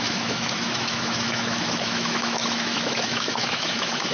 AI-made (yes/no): yes